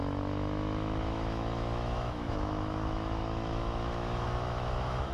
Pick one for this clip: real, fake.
fake